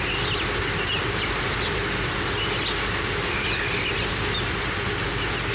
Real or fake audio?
real